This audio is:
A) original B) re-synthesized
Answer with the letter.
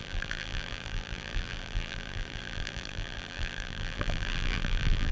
B